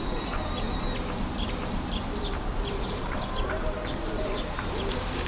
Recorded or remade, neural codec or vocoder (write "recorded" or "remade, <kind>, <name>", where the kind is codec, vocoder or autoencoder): remade, vocoder, BigVGAN v2